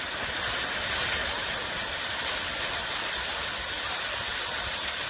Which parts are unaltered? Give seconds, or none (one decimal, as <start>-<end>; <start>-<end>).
0.0-1.2; 4.3-5.1